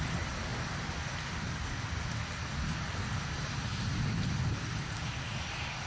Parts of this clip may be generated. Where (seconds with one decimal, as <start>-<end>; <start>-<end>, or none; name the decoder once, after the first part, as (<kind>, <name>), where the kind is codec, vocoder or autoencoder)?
none